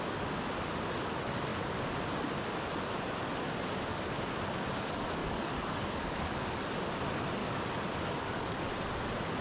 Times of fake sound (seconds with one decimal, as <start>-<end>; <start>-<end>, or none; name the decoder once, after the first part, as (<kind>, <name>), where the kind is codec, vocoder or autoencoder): 5.2-6.6 (codec, DAC); 7.4-8.7